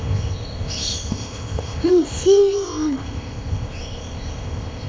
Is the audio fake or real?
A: fake